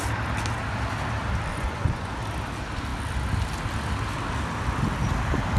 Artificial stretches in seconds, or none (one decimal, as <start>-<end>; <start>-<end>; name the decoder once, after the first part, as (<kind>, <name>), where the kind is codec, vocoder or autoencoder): 1.5-2.1 (vocoder, Vocos)